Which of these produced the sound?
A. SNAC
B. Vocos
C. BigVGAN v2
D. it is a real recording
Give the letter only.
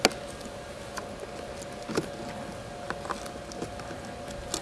D